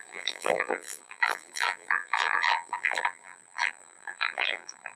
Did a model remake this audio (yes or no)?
yes